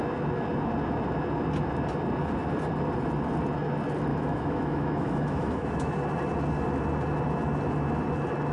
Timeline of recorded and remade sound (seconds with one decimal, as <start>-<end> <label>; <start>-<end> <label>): 0.0-4.1 recorded; 4.1-5.9 remade; 5.9-8.5 recorded